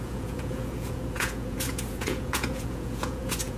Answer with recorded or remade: remade